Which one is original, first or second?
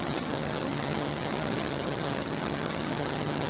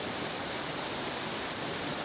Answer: second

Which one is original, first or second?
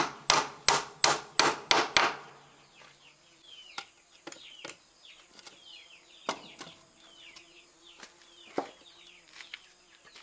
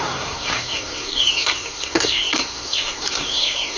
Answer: first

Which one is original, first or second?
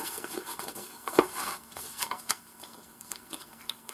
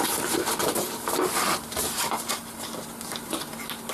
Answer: second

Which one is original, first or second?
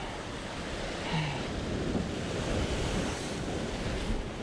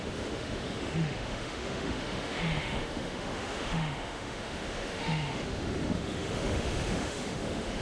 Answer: first